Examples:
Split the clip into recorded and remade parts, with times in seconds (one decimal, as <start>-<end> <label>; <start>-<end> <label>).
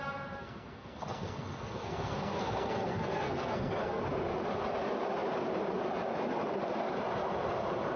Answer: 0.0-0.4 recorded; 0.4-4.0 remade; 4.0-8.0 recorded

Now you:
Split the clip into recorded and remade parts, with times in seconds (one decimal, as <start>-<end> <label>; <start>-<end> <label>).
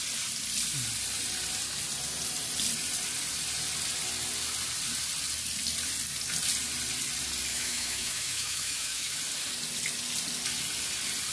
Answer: 0.0-7.5 recorded; 7.5-9.2 remade; 9.2-11.3 recorded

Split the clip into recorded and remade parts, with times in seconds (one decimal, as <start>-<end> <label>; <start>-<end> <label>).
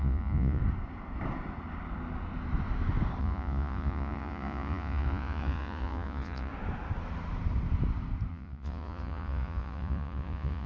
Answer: 0.0-0.6 remade; 0.6-3.2 recorded; 3.2-6.5 remade; 6.5-8.3 recorded; 8.3-10.7 remade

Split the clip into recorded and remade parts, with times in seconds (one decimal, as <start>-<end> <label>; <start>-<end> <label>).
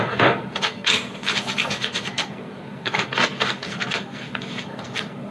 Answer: 0.0-5.3 remade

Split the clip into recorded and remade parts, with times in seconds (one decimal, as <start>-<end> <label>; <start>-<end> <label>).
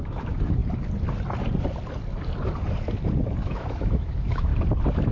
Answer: 0.0-0.6 remade; 0.6-3.4 recorded; 3.4-4.5 remade; 4.5-5.1 recorded